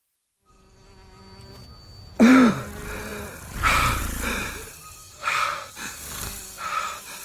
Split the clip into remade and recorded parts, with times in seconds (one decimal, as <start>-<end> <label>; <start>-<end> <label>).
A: 0.0-5.0 recorded; 5.0-6.3 remade; 6.3-7.2 recorded